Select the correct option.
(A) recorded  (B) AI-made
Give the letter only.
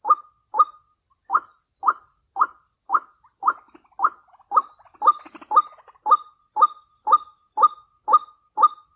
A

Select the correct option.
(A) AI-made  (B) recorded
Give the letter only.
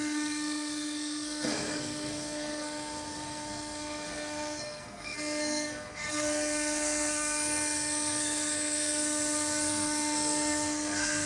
A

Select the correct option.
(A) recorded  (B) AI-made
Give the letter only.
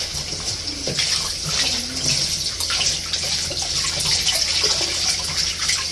A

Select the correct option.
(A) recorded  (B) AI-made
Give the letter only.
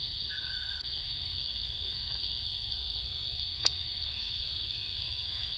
B